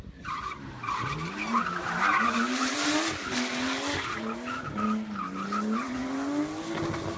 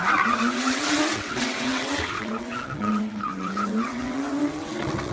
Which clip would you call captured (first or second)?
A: first